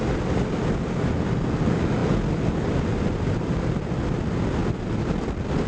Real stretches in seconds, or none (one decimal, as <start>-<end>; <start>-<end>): 0.0-5.7